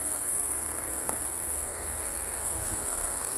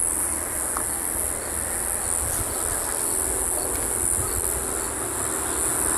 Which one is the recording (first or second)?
second